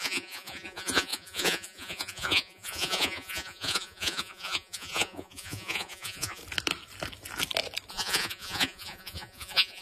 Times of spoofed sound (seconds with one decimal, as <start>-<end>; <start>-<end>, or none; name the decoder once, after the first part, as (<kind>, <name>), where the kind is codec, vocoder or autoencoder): 0.0-6.4 (vocoder, Vocos); 7.9-9.8